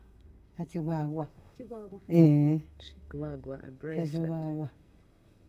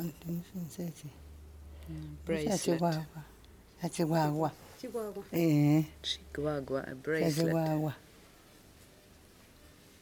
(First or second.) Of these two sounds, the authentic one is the second